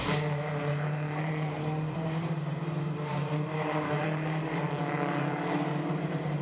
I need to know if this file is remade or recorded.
remade